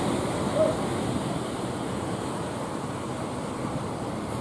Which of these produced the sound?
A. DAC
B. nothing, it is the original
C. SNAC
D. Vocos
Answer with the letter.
B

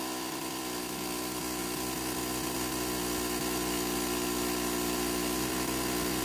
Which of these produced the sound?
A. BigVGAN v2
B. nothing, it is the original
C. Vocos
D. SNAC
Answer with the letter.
B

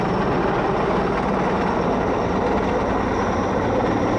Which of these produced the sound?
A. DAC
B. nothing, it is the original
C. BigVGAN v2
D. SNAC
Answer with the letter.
B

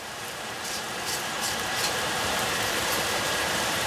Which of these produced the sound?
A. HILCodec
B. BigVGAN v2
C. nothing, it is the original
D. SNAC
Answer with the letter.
B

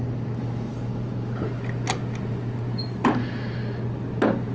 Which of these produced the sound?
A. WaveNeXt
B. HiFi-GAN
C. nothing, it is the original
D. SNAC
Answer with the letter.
C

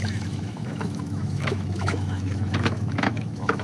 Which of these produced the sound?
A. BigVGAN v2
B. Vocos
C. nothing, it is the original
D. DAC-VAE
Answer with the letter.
D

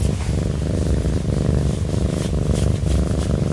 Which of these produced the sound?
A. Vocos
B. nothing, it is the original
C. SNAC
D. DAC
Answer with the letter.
B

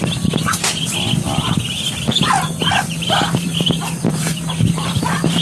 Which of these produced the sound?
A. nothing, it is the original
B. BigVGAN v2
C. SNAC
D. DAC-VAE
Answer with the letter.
B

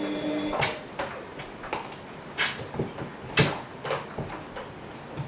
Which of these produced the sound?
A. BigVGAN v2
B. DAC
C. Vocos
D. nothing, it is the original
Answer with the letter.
D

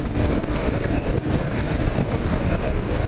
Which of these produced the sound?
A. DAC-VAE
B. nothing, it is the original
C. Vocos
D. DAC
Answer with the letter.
D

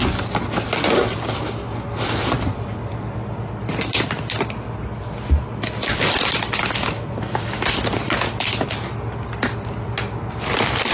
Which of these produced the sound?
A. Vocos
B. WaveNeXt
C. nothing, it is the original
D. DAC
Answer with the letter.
C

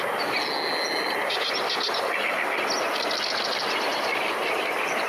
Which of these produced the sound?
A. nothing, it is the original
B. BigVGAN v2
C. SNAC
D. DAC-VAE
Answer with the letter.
A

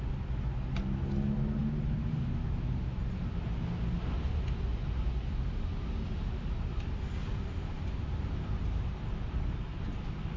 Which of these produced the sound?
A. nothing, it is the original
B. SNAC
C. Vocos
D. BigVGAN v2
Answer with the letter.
A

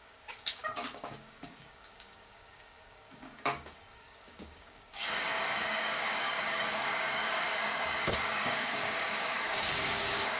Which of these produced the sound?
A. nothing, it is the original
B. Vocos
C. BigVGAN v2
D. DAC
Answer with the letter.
D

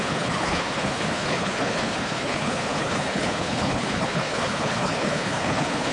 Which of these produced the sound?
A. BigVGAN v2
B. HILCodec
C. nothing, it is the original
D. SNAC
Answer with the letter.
B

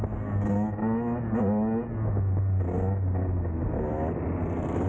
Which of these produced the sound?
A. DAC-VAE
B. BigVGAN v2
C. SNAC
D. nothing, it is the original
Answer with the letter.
D